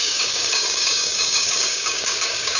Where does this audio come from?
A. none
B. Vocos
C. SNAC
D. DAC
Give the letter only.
D